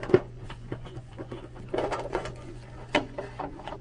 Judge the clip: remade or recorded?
remade